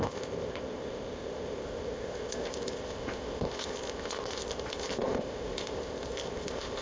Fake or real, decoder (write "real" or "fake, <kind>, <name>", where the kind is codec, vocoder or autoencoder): fake, codec, ZipCodec